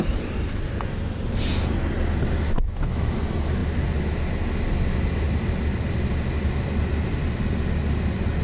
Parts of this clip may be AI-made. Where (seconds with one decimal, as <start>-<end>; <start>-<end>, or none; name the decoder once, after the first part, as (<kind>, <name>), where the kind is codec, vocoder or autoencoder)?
2.7-3.2 (autoencoder, DAC-VAE)